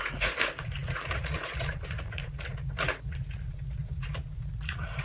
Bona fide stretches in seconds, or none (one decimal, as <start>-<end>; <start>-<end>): none